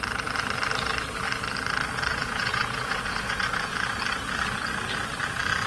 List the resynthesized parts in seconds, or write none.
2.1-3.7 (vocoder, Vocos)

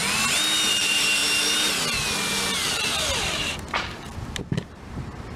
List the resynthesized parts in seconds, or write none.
0.7-1.2 (vocoder, BigVGAN v2); 4.4-5.4